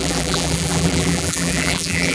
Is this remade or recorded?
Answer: remade